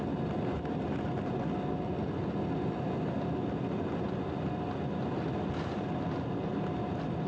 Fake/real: real